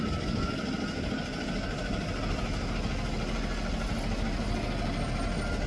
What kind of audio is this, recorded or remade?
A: recorded